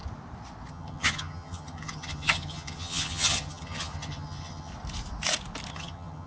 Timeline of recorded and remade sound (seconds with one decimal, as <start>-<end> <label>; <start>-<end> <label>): 0.0-0.7 recorded; 0.7-4.7 remade; 4.7-5.7 recorded; 5.7-6.3 remade